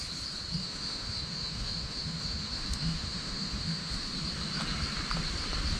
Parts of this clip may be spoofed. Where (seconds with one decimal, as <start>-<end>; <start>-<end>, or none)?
0.6-4.1